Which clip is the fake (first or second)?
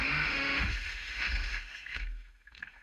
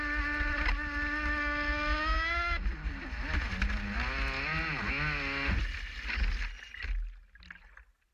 first